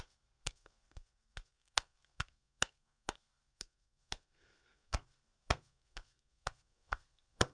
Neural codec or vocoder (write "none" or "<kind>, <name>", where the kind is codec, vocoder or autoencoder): codec, SNAC